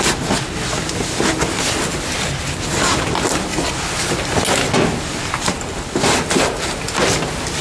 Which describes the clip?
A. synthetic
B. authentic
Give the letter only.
B